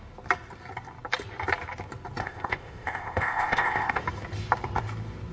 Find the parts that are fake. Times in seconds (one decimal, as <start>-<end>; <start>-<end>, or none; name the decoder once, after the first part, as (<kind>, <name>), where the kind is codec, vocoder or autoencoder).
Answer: 2.2-4.0 (codec, ZipCodec)